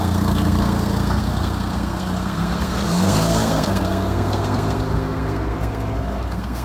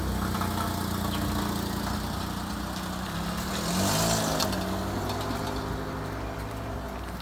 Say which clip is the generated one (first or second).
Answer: first